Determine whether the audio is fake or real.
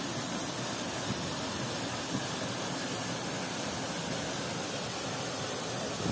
real